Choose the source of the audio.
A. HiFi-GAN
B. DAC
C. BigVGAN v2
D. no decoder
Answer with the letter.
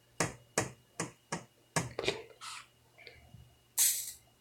D